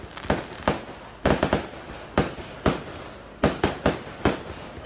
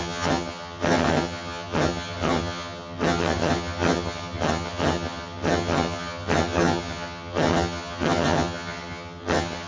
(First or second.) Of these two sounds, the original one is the first